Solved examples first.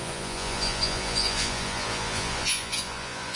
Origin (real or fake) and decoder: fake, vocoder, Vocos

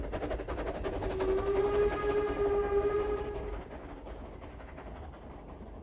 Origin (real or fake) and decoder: real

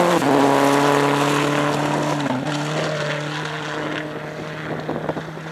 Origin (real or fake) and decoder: real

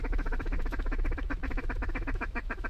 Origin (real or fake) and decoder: fake, autoencoder, DAC-VAE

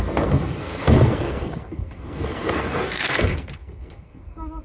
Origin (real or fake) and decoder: fake, codec, SNAC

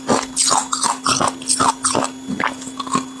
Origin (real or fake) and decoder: real